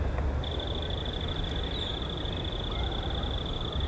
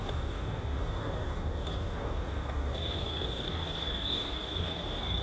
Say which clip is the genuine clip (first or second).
first